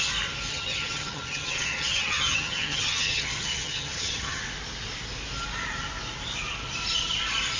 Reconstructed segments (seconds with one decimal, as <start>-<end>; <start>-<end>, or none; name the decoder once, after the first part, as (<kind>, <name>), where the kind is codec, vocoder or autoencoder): 0.5-4.4 (vocoder, HiFi-GAN)